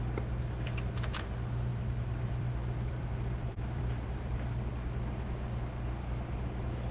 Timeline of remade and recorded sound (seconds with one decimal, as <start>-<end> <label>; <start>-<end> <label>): 0.0-1.7 recorded; 1.7-4.7 remade; 4.7-6.9 recorded